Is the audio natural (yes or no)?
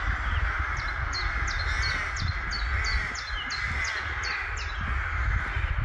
yes